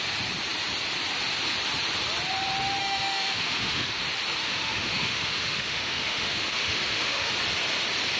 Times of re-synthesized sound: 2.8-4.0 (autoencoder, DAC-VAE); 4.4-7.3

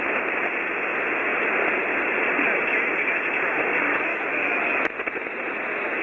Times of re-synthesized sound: 4.1-4.6 (autoencoder, DAC-VAE)